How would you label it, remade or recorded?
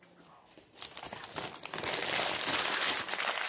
recorded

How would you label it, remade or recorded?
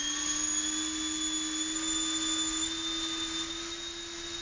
recorded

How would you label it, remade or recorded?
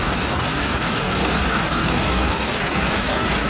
remade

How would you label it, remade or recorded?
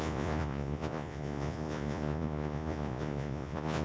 remade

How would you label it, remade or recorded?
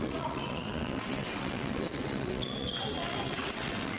remade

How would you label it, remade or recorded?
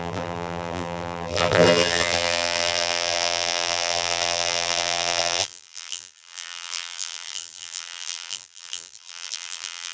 remade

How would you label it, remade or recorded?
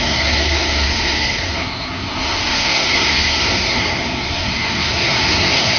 remade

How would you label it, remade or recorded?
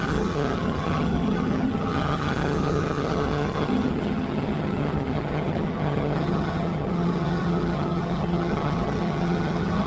remade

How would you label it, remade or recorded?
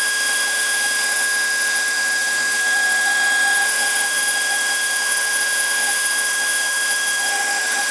remade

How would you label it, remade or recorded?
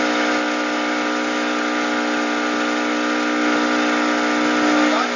recorded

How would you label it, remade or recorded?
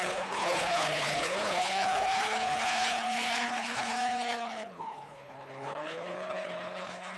remade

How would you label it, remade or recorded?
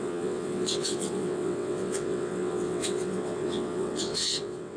remade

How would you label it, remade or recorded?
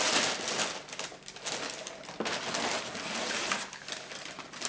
recorded